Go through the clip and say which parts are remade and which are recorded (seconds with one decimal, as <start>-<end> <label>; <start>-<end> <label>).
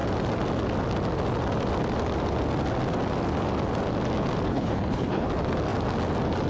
0.0-4.5 recorded; 4.5-5.3 remade; 5.3-6.5 recorded